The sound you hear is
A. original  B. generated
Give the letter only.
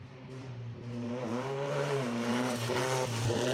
B